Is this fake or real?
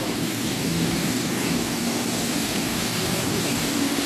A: fake